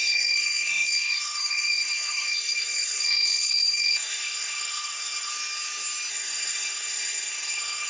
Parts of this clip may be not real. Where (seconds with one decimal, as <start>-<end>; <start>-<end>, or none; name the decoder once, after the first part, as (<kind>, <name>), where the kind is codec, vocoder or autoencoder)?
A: 0.0-5.3 (codec, SNAC); 6.1-7.9